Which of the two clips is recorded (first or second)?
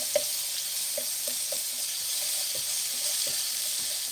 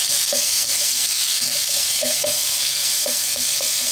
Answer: first